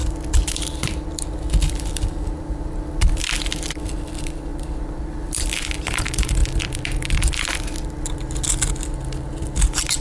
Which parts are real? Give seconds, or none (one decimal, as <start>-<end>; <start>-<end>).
4.0-4.5; 5.7-6.4; 7.5-10.0